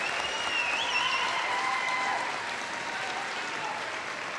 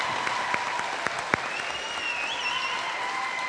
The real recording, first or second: second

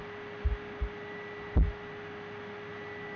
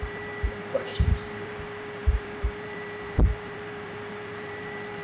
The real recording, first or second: first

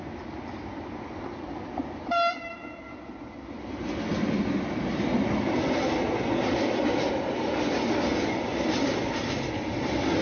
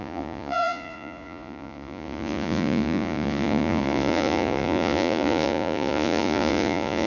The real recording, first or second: first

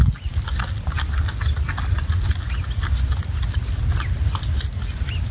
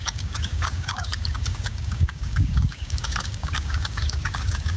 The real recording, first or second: first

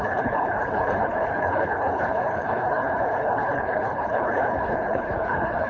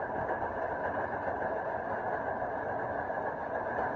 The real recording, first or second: second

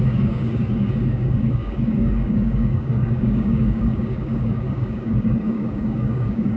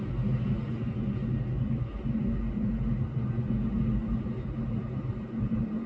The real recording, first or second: second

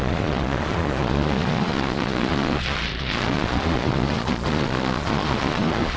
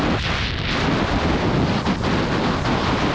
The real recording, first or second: second